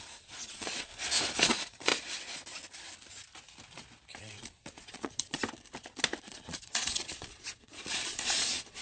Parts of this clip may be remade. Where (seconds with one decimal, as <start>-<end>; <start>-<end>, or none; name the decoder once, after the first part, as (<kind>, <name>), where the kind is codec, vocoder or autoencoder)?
0.0-0.9 (vocoder, Vocos); 1.5-1.9; 4.2-5.4; 6.2-8.8